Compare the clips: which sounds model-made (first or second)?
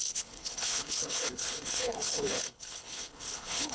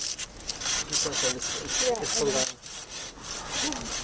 first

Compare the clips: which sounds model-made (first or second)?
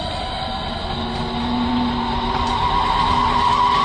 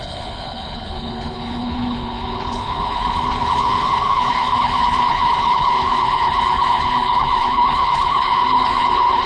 second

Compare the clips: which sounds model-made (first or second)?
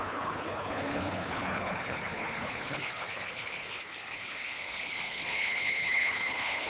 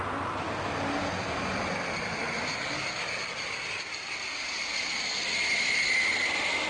first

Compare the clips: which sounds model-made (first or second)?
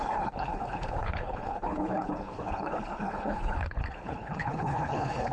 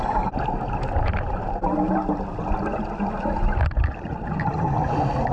first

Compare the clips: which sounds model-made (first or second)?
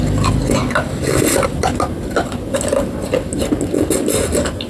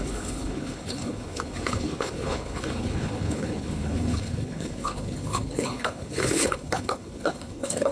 second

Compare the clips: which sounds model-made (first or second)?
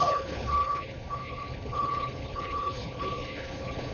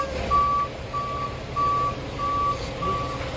first